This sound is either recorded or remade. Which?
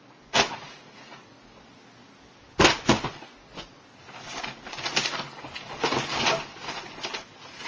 recorded